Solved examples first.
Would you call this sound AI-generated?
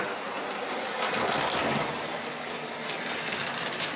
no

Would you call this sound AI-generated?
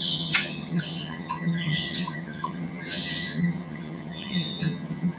yes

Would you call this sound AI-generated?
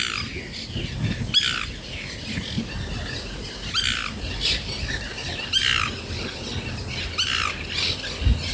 no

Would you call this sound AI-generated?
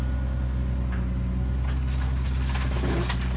no